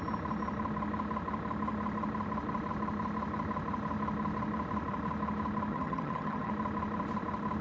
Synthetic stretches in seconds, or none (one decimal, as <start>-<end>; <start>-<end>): 5.7-6.5

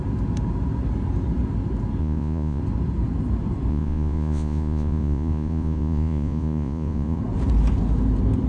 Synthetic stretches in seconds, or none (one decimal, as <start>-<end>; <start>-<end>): 2.0-2.6; 3.7-7.2

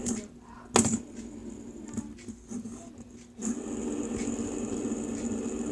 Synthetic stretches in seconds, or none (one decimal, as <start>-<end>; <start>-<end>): none

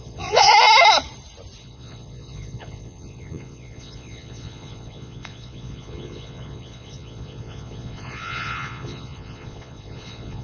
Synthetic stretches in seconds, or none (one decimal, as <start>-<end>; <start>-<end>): 0.0-0.5; 1.6-10.4

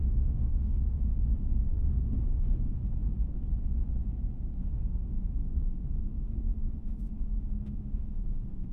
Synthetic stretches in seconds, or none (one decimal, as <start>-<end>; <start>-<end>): 0.0-2.8; 4.6-8.7

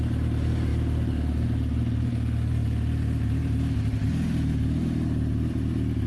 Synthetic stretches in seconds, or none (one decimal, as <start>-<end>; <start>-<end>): none